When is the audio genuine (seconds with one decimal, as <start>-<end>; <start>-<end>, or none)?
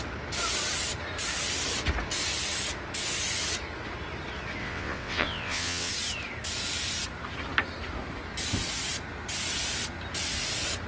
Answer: 0.0-4.6; 5.9-10.9